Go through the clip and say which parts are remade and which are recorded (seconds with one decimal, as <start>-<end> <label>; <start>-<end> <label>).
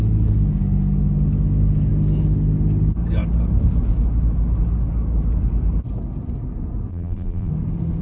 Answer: 0.0-6.9 recorded; 6.9-7.5 remade; 7.5-8.0 recorded